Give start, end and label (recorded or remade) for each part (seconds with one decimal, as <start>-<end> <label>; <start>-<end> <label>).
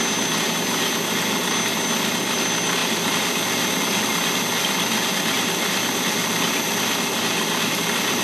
0.0-8.2 recorded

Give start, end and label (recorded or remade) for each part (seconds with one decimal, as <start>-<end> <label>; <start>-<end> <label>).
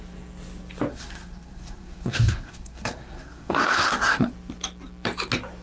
0.0-0.9 recorded; 0.9-4.3 remade; 4.3-5.6 recorded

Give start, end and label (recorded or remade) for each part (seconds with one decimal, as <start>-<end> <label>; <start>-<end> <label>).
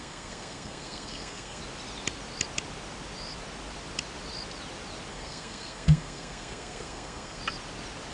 0.0-1.6 remade; 1.6-5.1 recorded; 5.1-7.4 remade; 7.4-8.1 recorded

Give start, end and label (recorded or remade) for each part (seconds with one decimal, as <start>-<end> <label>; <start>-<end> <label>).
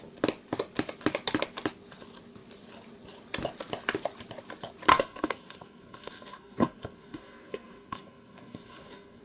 0.0-4.9 recorded; 4.9-9.2 remade